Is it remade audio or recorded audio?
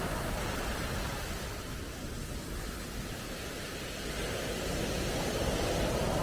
recorded